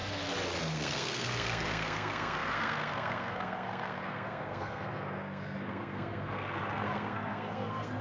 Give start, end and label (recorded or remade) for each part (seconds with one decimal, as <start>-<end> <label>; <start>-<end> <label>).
0.0-0.6 recorded; 0.6-8.0 remade